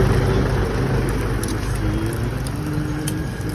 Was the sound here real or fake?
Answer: real